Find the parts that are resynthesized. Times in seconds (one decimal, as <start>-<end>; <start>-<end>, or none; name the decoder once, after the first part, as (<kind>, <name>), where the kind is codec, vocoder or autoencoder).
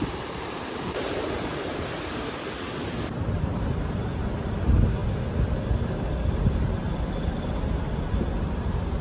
0.0-1.5 (vocoder, BigVGAN v2); 2.1-5.0; 8.4-9.0